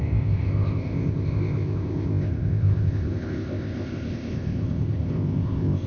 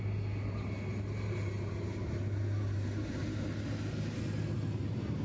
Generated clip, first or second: first